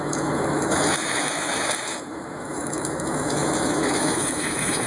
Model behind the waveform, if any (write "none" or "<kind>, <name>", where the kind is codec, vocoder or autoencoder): autoencoder, DAC-VAE